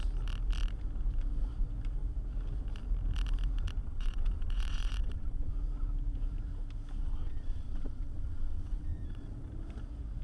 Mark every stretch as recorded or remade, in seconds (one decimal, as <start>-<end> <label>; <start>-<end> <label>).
0.0-3.8 recorded; 3.8-5.5 remade; 5.5-7.0 recorded; 7.0-9.5 remade; 9.5-10.2 recorded